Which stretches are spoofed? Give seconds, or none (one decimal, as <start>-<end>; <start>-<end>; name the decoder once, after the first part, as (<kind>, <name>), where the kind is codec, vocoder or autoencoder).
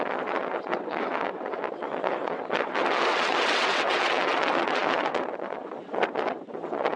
0.0-7.0 (vocoder, WaveNeXt)